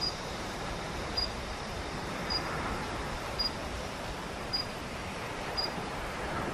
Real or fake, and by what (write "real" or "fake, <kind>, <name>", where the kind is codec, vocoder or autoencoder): fake, vocoder, BigVGAN v2